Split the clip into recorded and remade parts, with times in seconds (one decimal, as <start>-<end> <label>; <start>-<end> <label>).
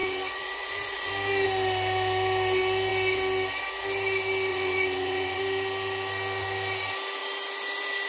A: 0.0-1.1 remade; 1.1-4.5 recorded; 4.5-5.4 remade; 5.4-8.1 recorded